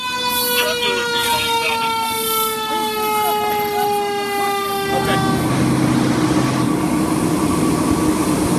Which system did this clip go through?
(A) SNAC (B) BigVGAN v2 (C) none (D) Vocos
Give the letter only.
C